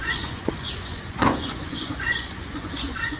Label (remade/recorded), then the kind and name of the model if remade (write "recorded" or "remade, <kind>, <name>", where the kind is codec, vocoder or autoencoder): remade, vocoder, Vocos